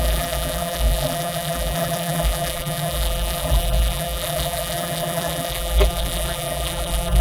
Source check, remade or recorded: remade